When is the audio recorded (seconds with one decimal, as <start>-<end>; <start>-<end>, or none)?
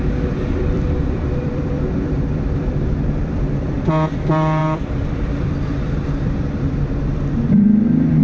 none